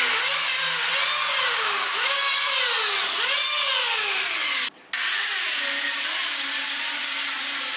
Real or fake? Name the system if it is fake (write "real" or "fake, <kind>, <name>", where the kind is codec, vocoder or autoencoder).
real